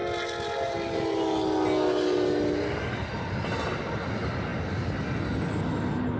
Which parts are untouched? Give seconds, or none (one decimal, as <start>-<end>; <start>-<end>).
0.0-6.2

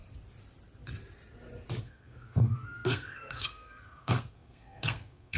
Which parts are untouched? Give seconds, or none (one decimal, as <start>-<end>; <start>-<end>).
0.0-1.8